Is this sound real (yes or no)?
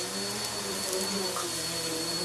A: yes